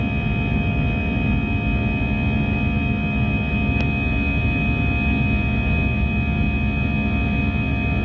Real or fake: real